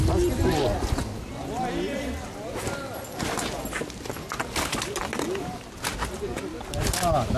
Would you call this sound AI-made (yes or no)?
no